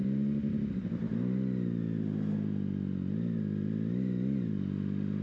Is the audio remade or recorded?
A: recorded